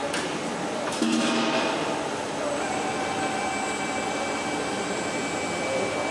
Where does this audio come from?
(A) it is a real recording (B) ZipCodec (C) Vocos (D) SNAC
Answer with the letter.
A